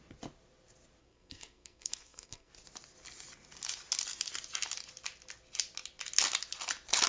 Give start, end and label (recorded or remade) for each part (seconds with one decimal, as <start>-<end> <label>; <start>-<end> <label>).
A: 0.0-1.0 recorded; 1.0-2.5 remade; 2.5-7.1 recorded